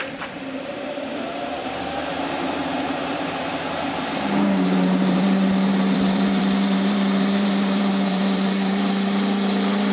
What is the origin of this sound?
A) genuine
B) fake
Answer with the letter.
B